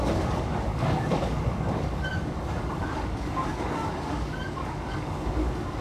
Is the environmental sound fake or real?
fake